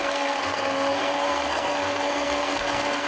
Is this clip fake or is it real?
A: fake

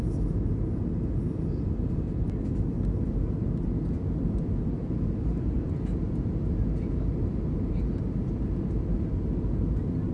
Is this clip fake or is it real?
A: real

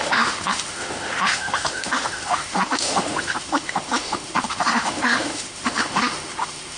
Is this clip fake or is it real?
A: fake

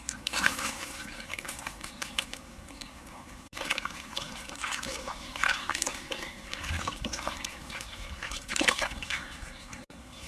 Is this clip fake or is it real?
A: fake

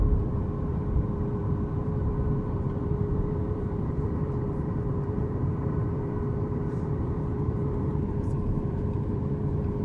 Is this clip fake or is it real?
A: fake